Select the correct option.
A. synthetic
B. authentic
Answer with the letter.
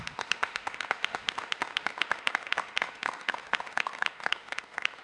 A